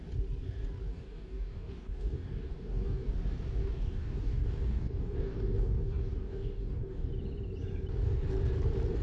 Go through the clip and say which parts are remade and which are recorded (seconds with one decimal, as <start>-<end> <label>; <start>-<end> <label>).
0.0-0.9 recorded; 0.9-3.1 remade; 3.1-3.6 recorded; 3.6-7.1 remade; 7.1-9.0 recorded